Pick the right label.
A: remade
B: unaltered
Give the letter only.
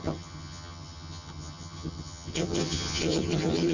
A